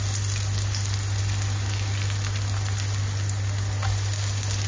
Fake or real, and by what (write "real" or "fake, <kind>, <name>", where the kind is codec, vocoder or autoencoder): real